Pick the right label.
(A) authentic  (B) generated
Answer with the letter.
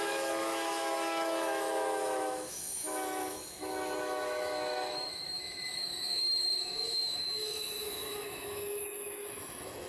B